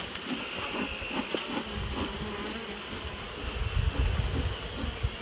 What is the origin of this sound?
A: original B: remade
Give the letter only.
A